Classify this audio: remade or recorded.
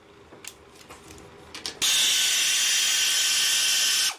recorded